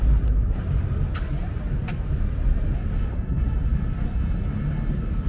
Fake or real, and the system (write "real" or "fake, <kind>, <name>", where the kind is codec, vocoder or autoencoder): real